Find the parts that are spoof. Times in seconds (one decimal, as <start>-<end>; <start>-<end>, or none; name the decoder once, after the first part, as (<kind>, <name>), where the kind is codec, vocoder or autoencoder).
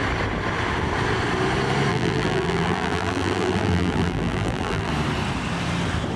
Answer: 1.9-4.9 (vocoder, BigVGAN v2)